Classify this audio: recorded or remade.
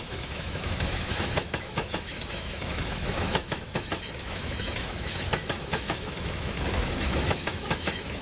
remade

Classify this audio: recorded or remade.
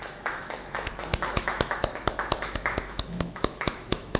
remade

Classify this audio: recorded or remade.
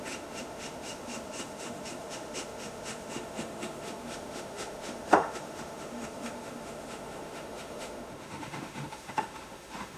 remade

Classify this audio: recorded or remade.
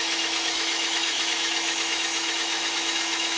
remade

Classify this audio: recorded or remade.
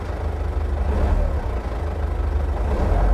recorded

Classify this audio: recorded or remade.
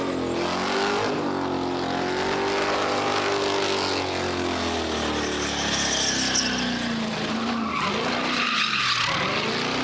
recorded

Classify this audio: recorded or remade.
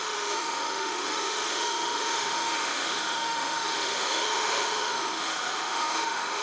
remade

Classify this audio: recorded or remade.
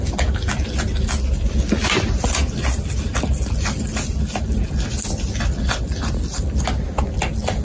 recorded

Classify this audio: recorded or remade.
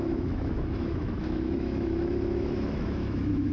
remade